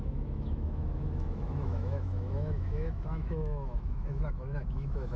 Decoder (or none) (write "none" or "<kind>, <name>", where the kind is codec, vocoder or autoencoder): autoencoder, DAC-VAE